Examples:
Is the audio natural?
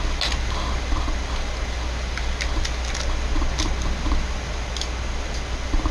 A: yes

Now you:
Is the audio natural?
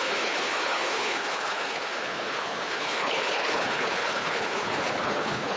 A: no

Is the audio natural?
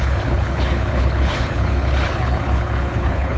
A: no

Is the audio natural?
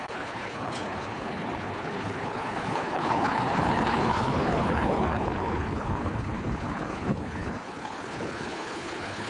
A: no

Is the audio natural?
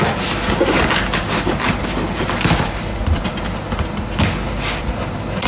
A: yes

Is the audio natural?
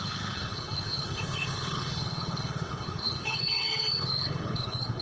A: no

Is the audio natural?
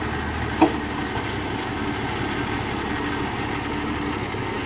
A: yes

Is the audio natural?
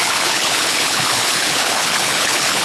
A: no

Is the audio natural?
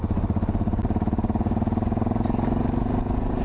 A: yes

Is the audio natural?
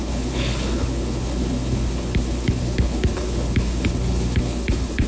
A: no